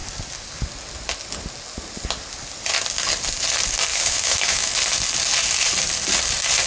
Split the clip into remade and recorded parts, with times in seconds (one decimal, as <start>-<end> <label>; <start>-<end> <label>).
0.0-3.9 recorded; 3.9-4.7 remade; 4.7-6.7 recorded